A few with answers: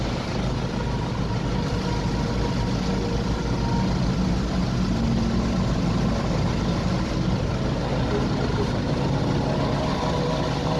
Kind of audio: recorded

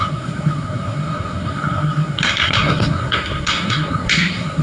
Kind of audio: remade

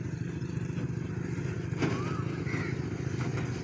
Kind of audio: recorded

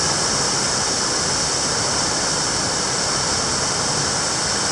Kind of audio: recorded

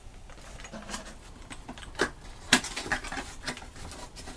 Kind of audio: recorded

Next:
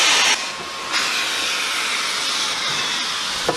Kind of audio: recorded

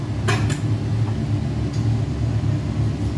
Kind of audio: recorded